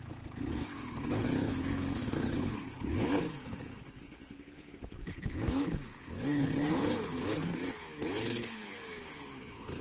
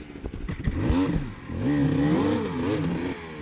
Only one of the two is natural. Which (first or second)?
second